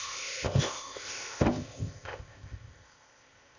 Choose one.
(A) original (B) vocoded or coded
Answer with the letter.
B